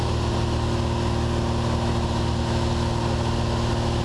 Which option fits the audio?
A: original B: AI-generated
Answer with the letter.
A